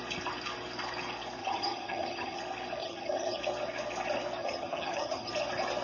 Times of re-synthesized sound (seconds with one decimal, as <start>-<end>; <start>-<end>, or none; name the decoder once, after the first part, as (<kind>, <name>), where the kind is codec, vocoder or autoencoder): 1.4-2.4 (vocoder, HiFi-GAN); 2.8-3.4; 4.4-5.3